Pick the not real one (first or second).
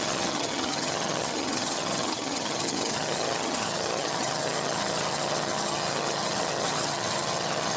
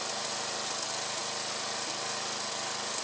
first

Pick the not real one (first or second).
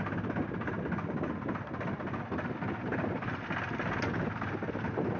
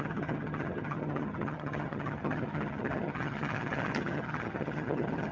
second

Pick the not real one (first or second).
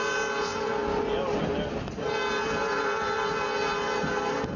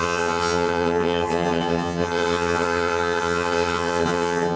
second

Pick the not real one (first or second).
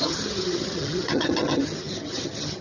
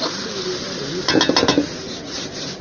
first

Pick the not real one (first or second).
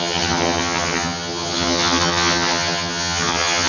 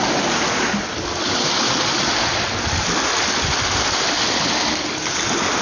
first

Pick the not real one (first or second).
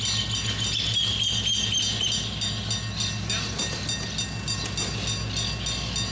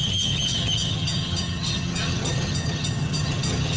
second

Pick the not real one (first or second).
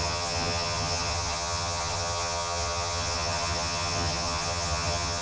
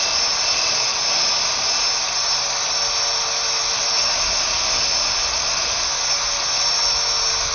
first